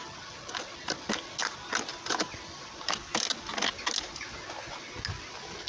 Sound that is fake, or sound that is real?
real